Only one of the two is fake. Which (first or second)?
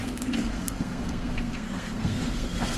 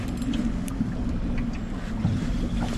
first